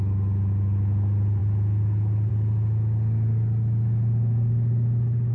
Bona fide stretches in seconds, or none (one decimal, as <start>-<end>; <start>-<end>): 0.0-5.3